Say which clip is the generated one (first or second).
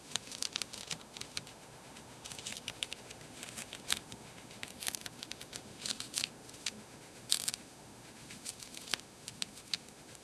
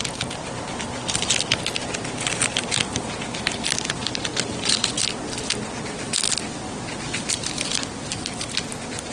first